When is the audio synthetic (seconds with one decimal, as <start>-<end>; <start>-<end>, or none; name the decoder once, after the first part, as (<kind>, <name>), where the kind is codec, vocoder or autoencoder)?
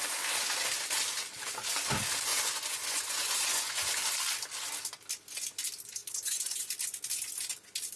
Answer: 2.3-3.9 (vocoder, Vocos); 6.0-6.6